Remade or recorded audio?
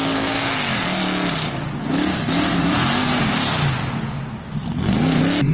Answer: recorded